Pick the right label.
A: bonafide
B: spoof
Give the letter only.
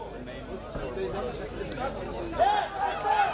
A